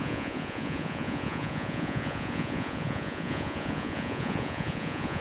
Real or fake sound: fake